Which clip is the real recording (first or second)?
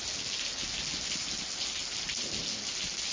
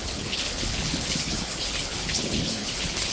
first